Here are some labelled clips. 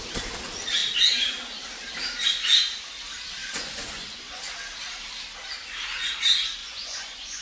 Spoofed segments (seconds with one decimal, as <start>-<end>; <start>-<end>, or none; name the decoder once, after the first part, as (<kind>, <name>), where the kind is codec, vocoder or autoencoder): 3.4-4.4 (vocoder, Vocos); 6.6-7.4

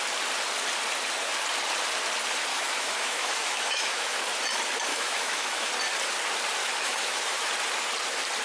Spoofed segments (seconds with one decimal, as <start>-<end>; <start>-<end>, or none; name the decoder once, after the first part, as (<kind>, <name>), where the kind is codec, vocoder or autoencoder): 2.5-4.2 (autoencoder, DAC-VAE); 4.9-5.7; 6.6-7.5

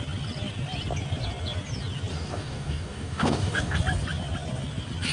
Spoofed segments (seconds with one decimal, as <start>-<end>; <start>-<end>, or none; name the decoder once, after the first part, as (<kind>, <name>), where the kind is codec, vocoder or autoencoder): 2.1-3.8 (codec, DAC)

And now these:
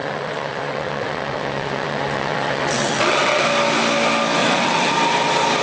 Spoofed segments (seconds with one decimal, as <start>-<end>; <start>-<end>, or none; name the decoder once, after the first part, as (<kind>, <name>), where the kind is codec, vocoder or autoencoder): 0.0-3.4 (vocoder, WaveNeXt); 4.4-4.9

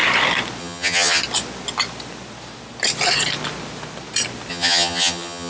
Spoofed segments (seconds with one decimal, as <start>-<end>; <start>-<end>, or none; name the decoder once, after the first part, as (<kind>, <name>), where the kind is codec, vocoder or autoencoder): 0.6-1.2 (vocoder, HiFi-GAN); 4.5-5.5